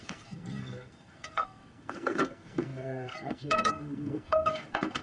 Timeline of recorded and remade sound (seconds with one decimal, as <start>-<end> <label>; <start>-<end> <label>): 0.0-5.0 remade